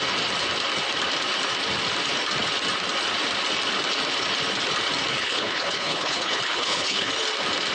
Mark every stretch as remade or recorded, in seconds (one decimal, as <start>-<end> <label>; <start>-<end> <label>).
0.0-5.1 recorded; 5.1-7.1 remade; 7.1-7.7 recorded